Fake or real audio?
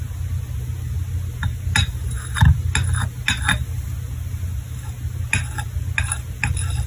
real